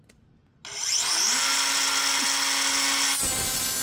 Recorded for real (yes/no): yes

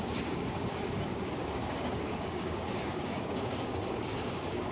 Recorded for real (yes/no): no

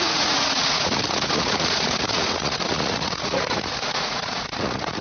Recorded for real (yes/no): no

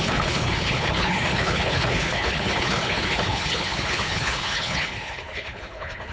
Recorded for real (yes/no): no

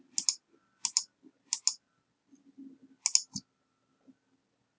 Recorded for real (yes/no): yes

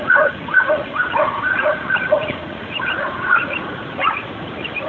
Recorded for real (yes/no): no